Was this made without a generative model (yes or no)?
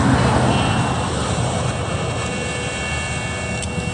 yes